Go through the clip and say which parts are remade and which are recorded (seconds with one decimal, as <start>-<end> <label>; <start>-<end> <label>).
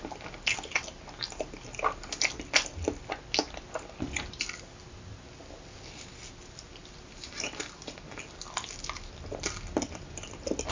0.0-10.7 recorded